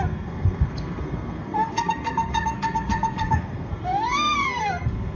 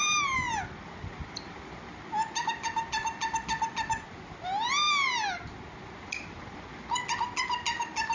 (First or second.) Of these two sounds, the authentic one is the second